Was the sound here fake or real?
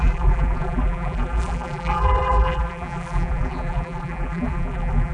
fake